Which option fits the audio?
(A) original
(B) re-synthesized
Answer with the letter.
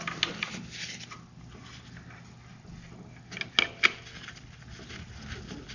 A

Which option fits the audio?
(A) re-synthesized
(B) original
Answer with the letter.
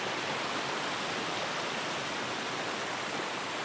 B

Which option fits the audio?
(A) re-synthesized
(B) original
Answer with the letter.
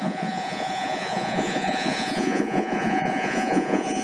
A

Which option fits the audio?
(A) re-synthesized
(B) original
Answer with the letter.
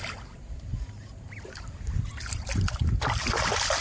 B